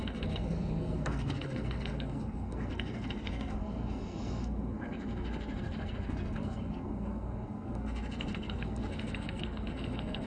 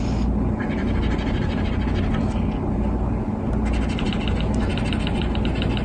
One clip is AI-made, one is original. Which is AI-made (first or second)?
first